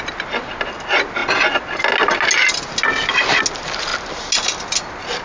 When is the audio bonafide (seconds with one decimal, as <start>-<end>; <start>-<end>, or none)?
0.0-5.2